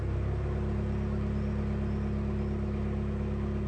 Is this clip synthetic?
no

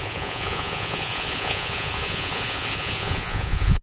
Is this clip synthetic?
yes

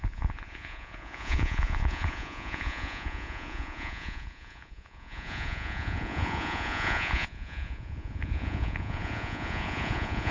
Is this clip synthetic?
yes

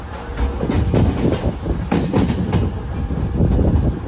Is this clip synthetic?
no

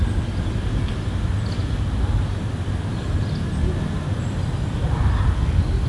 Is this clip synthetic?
no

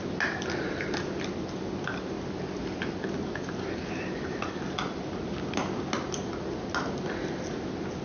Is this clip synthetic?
no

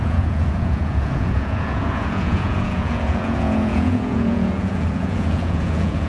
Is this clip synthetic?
yes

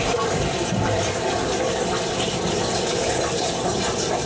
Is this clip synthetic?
no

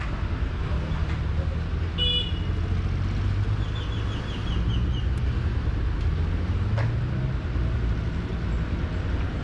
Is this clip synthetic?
no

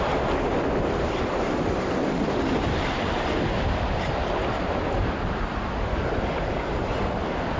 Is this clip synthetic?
no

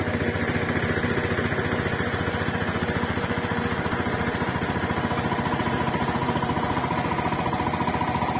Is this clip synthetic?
no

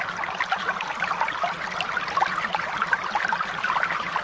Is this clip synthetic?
no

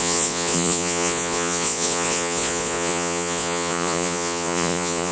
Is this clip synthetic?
yes